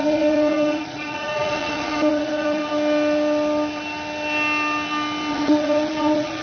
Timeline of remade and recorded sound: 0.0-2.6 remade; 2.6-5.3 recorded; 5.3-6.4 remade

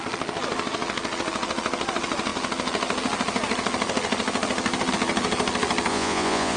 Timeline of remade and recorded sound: 0.0-5.9 recorded; 5.9-6.6 remade

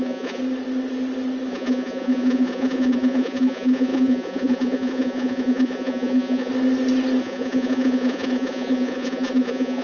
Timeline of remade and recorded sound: 0.0-0.4 remade; 0.4-1.5 recorded; 1.5-6.5 remade; 6.5-7.2 recorded; 7.2-9.8 remade

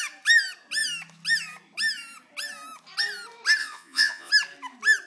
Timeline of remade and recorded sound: 0.0-3.6 recorded; 3.6-4.3 remade; 4.3-5.1 recorded

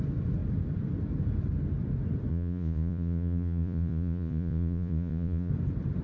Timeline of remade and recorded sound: 0.0-2.3 recorded; 2.3-5.5 remade; 5.5-6.0 recorded

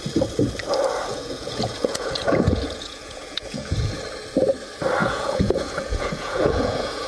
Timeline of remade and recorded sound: 0.0-1.1 recorded; 1.1-3.9 remade; 3.9-5.0 recorded; 5.0-7.1 remade

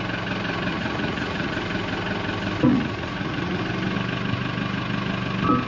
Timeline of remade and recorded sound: 0.0-0.7 recorded; 0.7-1.5 remade; 1.5-2.7 recorded; 2.7-3.6 remade; 3.6-5.7 recorded